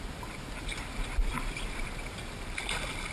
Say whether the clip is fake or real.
real